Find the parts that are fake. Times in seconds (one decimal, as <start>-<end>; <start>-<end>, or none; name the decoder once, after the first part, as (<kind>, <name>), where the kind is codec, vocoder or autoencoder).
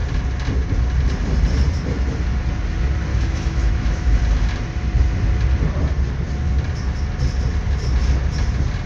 3.1-4.2 (autoencoder, DAC-VAE)